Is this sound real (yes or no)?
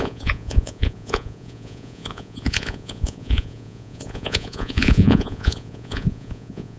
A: no